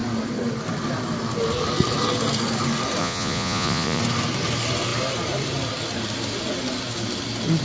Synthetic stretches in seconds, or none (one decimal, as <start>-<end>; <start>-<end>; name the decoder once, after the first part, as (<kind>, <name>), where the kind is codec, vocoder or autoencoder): 3.0-4.0 (vocoder, Vocos)